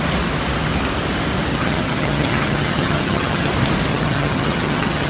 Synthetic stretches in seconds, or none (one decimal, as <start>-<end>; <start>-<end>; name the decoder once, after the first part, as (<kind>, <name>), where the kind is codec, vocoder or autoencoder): 1.5-3.5 (vocoder, HiFi-GAN); 3.9-5.1